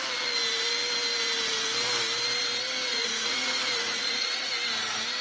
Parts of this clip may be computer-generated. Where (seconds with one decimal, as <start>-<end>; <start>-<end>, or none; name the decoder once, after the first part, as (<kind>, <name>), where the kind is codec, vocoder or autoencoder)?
2.9-4.5 (vocoder, Vocos)